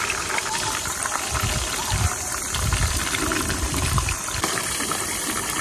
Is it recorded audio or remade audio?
remade